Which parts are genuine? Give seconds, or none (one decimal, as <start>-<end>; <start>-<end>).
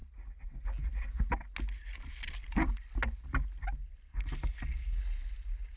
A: 0.0-4.1; 5.0-5.8